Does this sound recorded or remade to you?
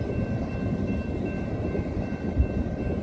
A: recorded